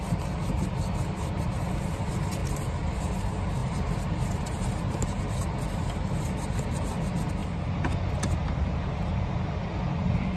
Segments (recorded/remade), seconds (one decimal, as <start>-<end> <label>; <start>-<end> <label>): 0.0-2.4 recorded; 2.4-3.2 remade; 3.2-3.6 recorded; 3.6-5.2 remade; 5.2-10.4 recorded